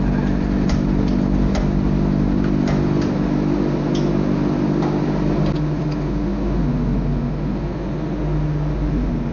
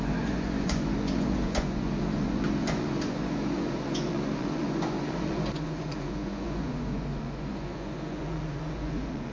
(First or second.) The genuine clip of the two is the first